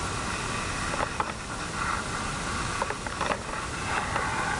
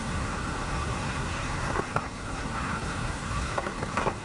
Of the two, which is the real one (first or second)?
first